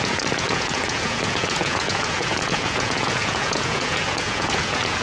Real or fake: fake